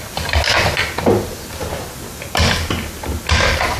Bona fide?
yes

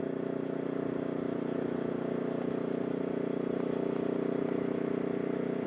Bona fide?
yes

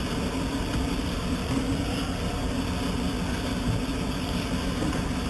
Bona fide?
yes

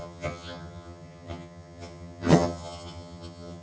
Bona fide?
no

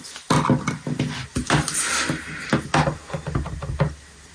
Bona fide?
yes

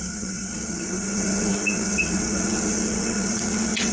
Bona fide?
no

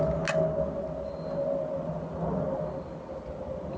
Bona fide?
yes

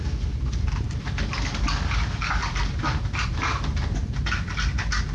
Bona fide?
yes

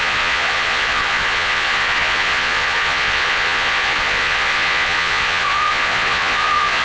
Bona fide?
no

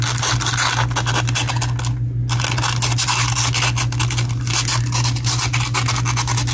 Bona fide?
yes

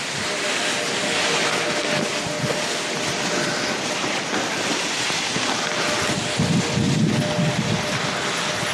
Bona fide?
yes